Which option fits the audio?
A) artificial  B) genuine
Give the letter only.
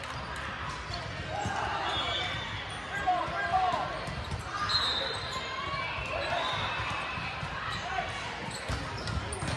B